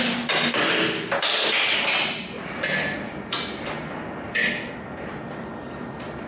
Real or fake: real